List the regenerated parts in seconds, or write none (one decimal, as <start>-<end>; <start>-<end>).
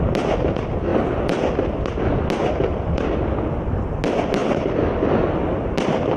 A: none